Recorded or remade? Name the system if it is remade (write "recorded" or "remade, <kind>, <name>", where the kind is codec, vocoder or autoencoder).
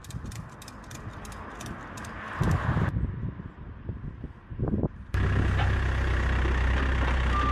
recorded